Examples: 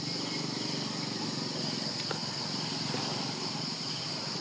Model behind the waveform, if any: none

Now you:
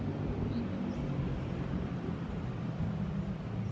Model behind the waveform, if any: none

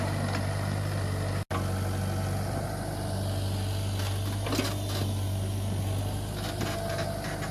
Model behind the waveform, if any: none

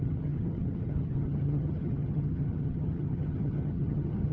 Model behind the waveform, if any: vocoder, HiFi-GAN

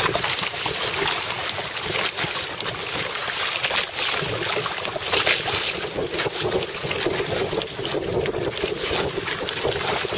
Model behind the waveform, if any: none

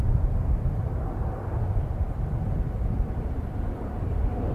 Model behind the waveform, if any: vocoder, BigVGAN v2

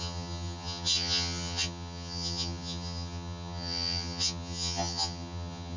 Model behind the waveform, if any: vocoder, HiFi-GAN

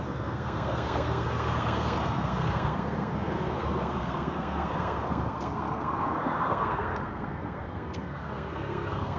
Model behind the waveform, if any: codec, SNAC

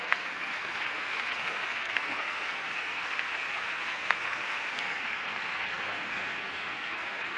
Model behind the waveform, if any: codec, SNAC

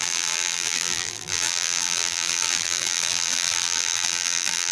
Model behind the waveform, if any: vocoder, BigVGAN v2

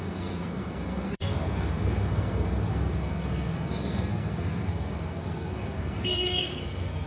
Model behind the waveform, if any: codec, SNAC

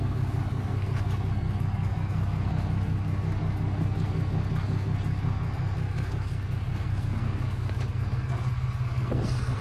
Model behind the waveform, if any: codec, SNAC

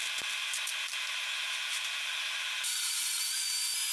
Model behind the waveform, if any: vocoder, BigVGAN v2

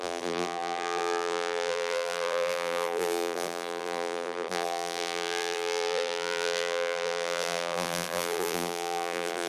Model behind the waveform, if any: vocoder, BigVGAN v2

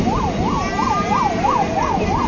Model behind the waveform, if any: none